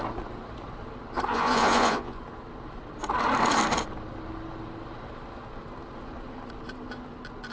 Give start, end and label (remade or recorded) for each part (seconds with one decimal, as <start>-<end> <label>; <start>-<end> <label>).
0.0-1.3 recorded; 1.3-2.2 remade; 2.2-7.5 recorded